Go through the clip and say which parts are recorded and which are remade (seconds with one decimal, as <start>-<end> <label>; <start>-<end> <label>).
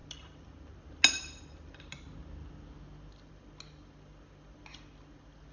0.0-5.5 recorded